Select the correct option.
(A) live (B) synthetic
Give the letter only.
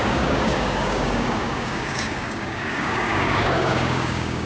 B